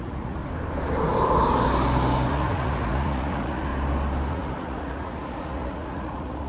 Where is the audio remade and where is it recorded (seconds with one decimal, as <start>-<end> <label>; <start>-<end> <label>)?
0.0-0.4 remade; 0.4-2.3 recorded; 2.3-3.7 remade; 3.7-4.3 recorded; 4.3-6.5 remade